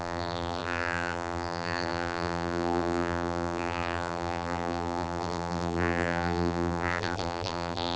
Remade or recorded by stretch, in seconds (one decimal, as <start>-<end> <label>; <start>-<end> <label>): 0.0-8.0 remade